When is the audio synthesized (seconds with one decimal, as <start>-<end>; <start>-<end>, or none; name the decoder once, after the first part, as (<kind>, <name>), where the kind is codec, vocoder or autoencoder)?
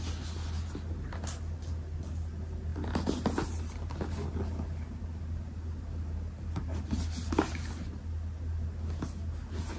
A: none